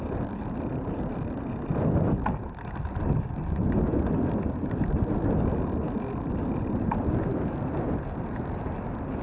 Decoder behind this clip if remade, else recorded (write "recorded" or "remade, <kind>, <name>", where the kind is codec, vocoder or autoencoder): recorded